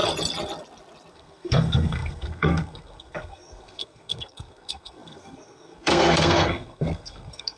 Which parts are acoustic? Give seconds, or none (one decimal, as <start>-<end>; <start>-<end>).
0.0-1.1